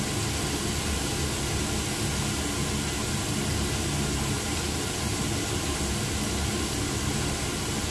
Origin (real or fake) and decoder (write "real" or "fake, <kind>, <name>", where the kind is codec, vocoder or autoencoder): real